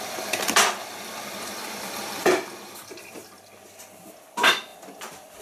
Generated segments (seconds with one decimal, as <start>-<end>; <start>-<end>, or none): 0.0-5.4